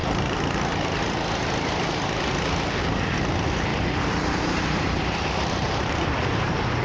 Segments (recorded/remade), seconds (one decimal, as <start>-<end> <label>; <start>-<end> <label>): 0.0-0.8 remade; 0.8-3.7 recorded; 3.7-6.8 remade